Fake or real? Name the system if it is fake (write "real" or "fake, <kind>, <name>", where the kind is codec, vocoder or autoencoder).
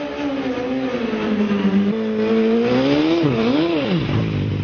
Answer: real